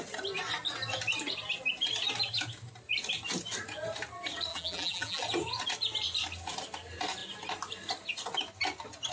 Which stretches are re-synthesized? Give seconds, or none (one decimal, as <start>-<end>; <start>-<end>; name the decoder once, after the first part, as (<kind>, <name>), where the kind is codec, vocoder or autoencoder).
4.5-5.2 (vocoder, BigVGAN v2)